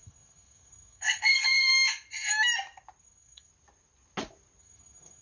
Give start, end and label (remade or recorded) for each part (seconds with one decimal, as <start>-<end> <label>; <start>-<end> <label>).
0.0-1.7 remade; 1.7-3.0 recorded; 3.0-3.5 remade; 3.5-4.6 recorded; 4.6-5.2 remade